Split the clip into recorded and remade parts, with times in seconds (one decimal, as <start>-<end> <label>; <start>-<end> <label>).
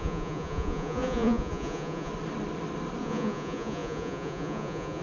0.0-2.1 remade; 2.1-3.0 recorded; 3.0-5.0 remade